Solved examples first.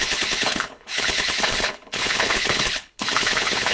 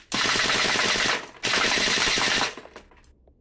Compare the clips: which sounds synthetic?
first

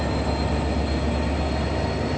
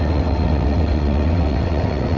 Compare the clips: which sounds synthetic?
second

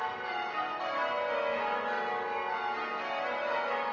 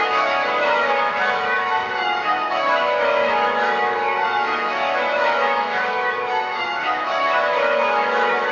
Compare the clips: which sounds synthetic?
second